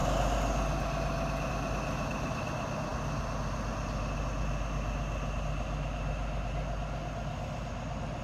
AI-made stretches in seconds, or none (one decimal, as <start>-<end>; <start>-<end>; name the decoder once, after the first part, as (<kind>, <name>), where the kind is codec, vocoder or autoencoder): none